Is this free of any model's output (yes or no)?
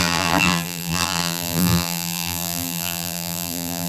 no